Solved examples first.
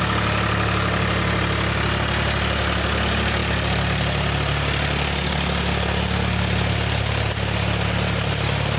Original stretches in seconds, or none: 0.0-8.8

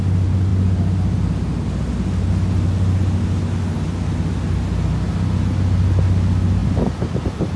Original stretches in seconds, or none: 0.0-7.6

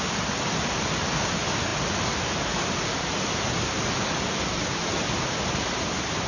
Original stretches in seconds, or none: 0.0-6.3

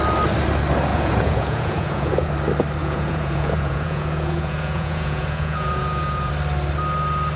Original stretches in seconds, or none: 0.0-0.9; 2.3-2.8; 6.3-7.4

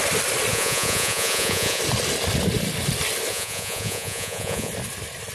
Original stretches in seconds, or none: 0.0-0.5; 1.8-3.3; 4.7-5.3